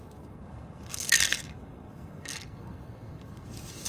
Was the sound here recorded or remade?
remade